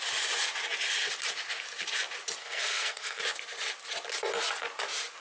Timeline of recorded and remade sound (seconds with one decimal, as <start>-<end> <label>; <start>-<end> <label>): 0.0-2.4 recorded; 2.4-3.2 remade; 3.2-5.2 recorded